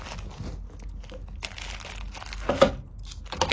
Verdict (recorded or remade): recorded